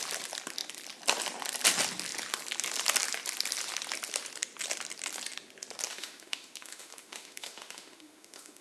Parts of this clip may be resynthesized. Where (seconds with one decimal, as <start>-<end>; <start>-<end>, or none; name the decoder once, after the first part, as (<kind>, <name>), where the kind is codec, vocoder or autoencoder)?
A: 5.9-8.6 (autoencoder, DAC-VAE)